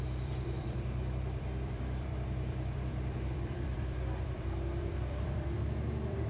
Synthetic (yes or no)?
yes